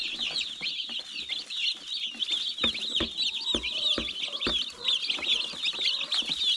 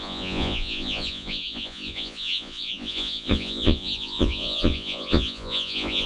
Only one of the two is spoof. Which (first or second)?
second